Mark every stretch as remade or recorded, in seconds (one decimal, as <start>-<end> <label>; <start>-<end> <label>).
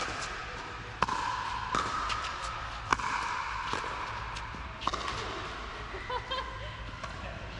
0.0-2.9 recorded; 2.9-3.7 remade; 3.7-7.6 recorded